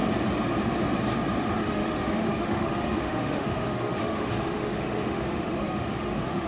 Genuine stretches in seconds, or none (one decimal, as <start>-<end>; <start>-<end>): 0.0-1.4